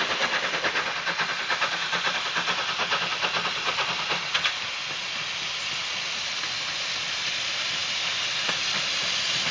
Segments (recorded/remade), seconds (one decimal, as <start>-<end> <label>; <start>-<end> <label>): 0.0-9.5 recorded

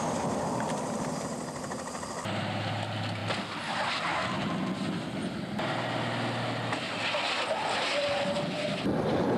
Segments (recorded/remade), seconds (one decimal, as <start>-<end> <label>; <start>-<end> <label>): 0.0-9.4 recorded

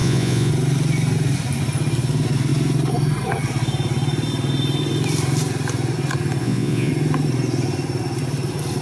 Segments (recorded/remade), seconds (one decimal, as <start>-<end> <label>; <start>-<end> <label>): 0.0-0.5 remade; 0.5-6.4 recorded; 6.4-6.9 remade; 6.9-8.8 recorded